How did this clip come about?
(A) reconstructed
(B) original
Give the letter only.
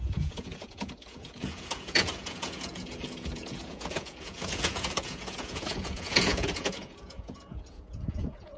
A